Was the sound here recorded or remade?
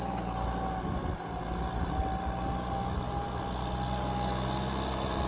recorded